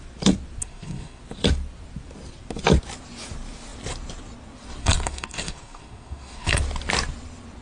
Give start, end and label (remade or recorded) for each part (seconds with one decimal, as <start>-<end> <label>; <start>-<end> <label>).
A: 0.0-0.6 recorded; 0.6-1.2 remade; 1.2-4.8 recorded; 4.8-6.6 remade; 6.6-7.6 recorded